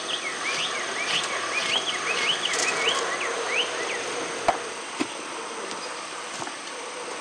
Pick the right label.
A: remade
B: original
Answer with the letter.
B